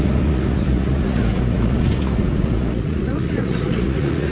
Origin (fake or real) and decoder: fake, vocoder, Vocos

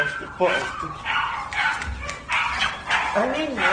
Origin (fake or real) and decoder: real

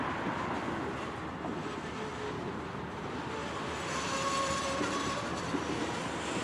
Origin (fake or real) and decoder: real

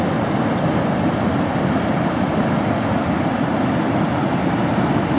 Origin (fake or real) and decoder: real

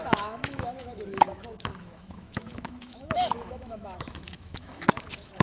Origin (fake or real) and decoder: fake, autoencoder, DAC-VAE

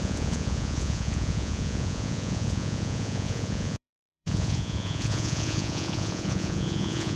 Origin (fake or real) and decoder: fake, vocoder, Vocos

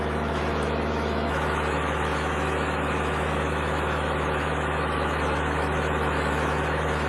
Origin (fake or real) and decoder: fake, autoencoder, DAC-VAE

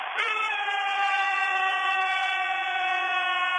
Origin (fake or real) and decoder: fake, vocoder, Vocos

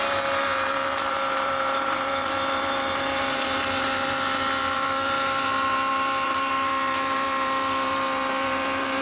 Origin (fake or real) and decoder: fake, vocoder, BigVGAN v2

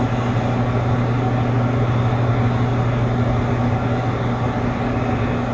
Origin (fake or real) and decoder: real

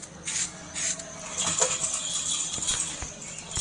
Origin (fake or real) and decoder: real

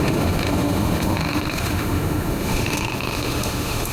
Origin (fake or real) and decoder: fake, autoencoder, DAC-VAE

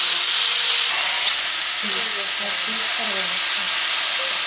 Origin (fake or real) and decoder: real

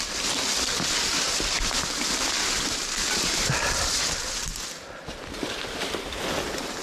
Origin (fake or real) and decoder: real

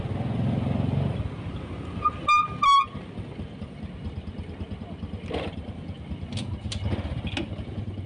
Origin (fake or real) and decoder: real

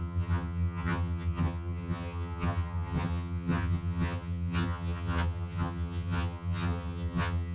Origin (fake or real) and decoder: fake, vocoder, HiFi-GAN